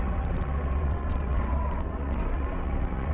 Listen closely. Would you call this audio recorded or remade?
remade